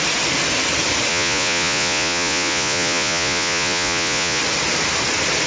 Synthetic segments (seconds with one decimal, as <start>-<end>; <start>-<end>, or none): 1.1-4.4